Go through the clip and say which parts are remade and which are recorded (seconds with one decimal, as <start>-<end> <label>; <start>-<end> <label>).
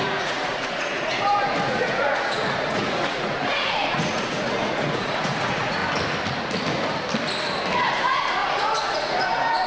0.0-5.8 remade; 5.8-7.9 recorded; 7.9-9.7 remade